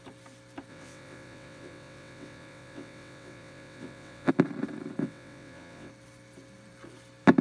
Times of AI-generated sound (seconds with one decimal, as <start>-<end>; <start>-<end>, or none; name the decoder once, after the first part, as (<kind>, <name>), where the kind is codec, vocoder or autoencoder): 0.7-4.3 (vocoder, WaveNeXt); 5.0-5.9